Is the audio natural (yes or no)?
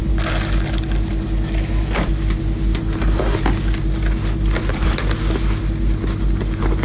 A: yes